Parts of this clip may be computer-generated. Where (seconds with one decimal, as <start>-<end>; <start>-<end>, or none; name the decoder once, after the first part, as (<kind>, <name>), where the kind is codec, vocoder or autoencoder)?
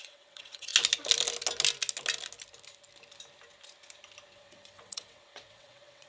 0.0-0.7 (vocoder, WaveNeXt); 4.4-6.1